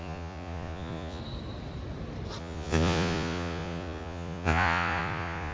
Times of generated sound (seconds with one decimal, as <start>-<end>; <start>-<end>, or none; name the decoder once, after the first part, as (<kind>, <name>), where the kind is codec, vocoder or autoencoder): 0.0-1.2 (vocoder, Vocos); 2.4-5.5